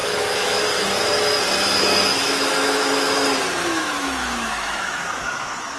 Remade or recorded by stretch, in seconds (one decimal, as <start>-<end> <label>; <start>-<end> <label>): 0.0-0.6 remade; 0.6-2.1 recorded; 2.1-3.1 remade; 3.1-3.6 recorded; 3.6-5.8 remade